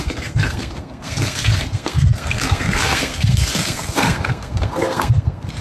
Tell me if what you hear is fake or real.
fake